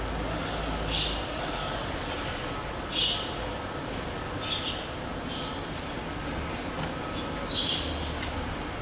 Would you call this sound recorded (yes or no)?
yes